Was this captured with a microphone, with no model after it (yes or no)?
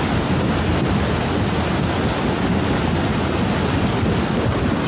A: yes